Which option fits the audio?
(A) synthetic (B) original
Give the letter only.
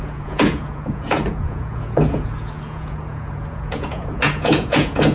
A